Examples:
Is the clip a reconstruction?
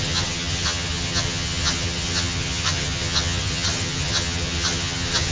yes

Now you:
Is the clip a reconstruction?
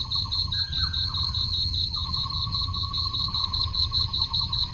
yes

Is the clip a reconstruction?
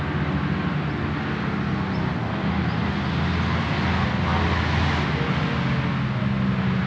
no